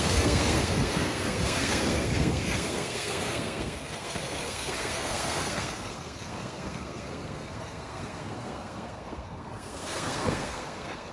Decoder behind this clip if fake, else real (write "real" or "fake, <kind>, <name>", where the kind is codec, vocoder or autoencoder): fake, codec, SNAC